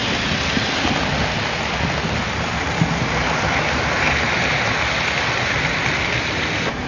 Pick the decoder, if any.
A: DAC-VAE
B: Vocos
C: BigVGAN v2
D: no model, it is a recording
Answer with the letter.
D